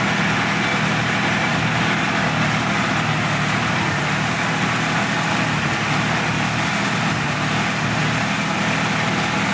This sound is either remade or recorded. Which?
recorded